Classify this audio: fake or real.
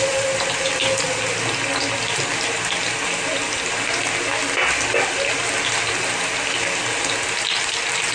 real